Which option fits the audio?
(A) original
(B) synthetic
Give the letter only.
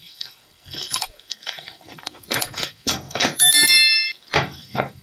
B